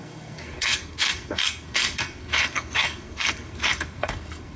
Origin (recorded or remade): remade